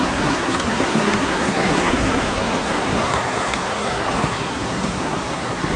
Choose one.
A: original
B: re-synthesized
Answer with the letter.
B